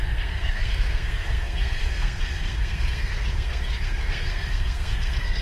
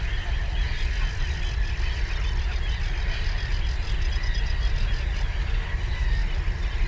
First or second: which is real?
second